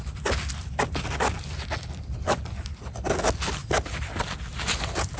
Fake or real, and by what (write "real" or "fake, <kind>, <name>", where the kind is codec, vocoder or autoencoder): real